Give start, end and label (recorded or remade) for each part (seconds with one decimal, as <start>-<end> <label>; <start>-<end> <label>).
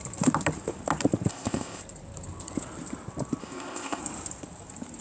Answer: 0.0-1.3 recorded; 1.3-1.8 remade; 1.8-3.4 recorded; 3.4-4.0 remade; 4.0-5.0 recorded